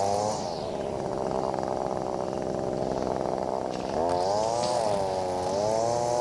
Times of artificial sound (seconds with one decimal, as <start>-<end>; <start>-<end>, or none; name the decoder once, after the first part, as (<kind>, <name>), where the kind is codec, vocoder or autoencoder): none